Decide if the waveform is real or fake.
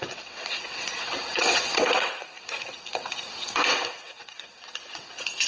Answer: fake